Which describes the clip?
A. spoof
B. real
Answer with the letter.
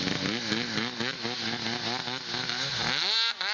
B